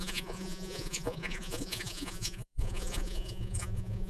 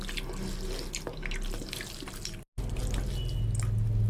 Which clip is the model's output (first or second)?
first